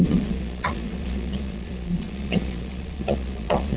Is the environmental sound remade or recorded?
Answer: remade